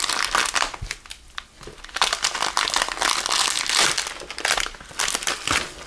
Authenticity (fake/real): real